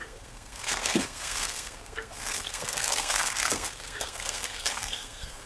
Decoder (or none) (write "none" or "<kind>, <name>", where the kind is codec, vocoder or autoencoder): codec, SNAC